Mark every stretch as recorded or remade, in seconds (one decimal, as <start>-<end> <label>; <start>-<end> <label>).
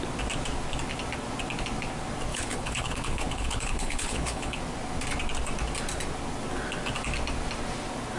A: 0.0-2.3 recorded; 2.3-4.6 remade; 4.6-8.2 recorded